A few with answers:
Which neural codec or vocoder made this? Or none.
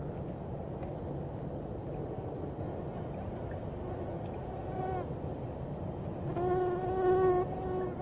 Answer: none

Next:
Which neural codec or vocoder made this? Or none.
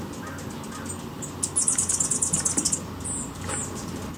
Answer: none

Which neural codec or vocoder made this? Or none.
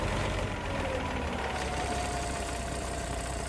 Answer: vocoder, BigVGAN v2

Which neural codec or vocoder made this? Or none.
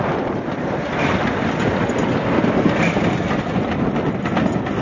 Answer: none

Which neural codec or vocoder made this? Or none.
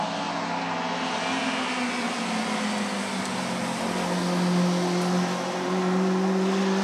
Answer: none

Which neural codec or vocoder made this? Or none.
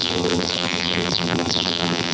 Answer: vocoder, BigVGAN v2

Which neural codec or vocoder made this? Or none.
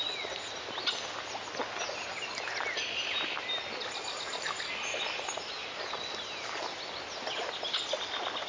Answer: none